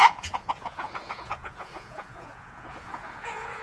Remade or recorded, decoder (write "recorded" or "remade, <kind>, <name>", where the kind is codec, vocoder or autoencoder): remade, vocoder, Vocos